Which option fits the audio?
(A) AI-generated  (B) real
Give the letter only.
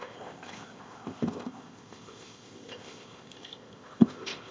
A